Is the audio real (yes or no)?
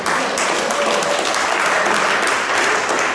yes